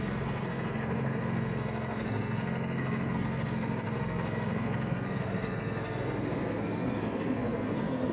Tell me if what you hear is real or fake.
fake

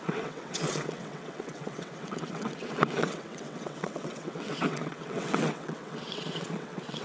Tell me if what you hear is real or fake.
fake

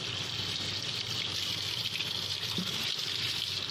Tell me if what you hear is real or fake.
real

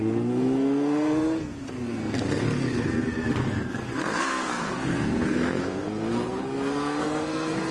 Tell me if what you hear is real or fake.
fake